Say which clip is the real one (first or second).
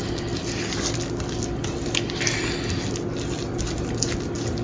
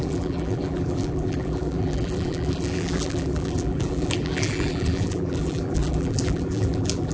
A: first